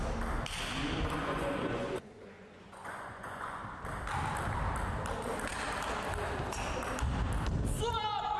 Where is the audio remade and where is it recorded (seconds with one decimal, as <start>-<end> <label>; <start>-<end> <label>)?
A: 0.0-1.2 recorded; 1.2-3.6 remade; 3.6-8.4 recorded